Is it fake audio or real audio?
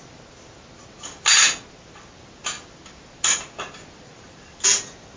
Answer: real